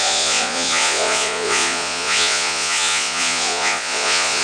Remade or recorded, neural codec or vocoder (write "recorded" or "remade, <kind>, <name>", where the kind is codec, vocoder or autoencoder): remade, vocoder, Vocos